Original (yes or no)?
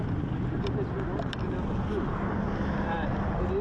yes